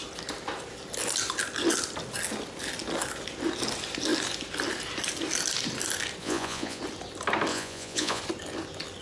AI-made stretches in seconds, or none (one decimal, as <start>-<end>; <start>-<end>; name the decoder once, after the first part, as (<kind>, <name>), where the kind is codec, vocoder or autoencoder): 6.2-6.8 (vocoder, Vocos); 7.5-8.2